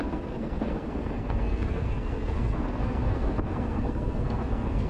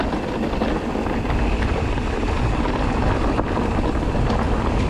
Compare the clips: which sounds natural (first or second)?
second